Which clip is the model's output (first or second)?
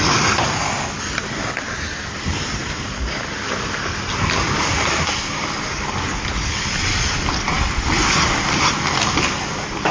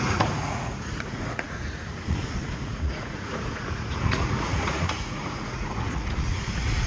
second